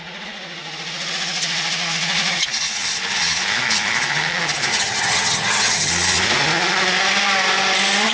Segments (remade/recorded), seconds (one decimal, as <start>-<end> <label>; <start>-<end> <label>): 0.0-4.7 recorded; 4.7-5.9 remade; 5.9-8.1 recorded